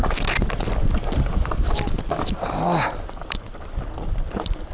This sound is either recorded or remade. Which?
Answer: recorded